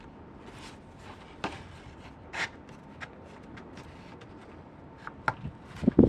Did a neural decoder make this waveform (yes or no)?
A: no